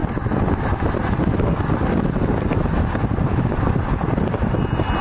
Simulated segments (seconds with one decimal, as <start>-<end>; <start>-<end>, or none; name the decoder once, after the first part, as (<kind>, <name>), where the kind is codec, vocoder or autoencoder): none

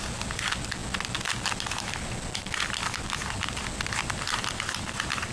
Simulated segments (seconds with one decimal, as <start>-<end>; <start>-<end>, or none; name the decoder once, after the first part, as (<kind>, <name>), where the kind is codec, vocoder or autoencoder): none

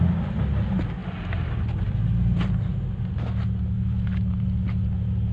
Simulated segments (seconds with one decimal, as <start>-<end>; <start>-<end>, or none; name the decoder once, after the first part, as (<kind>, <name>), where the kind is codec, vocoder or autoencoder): none

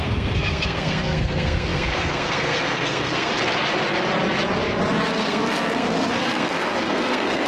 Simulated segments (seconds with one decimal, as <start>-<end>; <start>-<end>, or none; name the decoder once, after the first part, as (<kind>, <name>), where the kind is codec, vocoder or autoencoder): 0.0-3.3 (codec, SNAC); 5.1-7.5

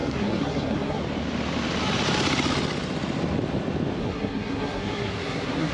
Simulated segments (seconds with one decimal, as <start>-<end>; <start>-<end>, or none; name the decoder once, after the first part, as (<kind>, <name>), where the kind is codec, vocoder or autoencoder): 0.0-1.0 (codec, SNAC); 4.0-5.7

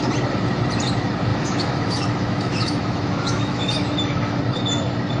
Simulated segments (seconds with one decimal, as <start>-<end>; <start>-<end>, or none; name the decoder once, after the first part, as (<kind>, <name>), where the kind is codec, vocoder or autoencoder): 1.3-4.4 (autoencoder, DAC-VAE)

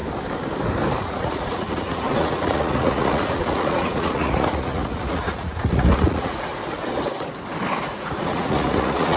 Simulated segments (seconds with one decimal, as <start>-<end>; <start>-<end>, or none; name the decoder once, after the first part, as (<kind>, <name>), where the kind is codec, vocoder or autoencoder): 1.0-6.5 (vocoder, Vocos); 7.9-9.2

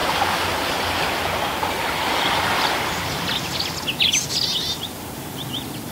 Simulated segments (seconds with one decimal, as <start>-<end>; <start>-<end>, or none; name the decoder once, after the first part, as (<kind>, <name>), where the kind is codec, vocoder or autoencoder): none